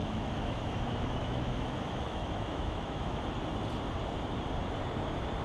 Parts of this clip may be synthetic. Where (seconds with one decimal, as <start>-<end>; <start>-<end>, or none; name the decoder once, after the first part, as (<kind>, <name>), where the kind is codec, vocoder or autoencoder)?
0.0-3.2 (autoencoder, DAC-VAE)

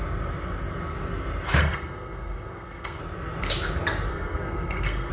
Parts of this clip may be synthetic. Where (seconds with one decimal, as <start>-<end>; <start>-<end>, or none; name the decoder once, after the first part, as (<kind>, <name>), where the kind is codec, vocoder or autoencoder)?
1.6-3.0 (codec, SNAC); 4.1-5.1